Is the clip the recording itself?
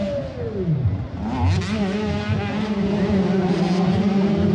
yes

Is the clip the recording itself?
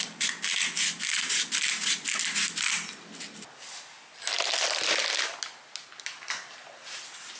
yes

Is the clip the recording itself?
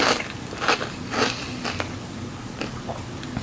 yes